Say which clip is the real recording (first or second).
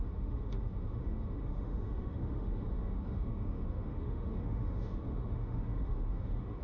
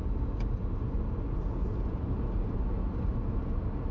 second